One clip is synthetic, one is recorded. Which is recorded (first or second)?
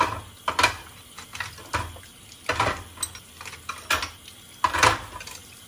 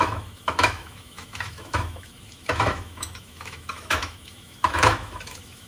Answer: first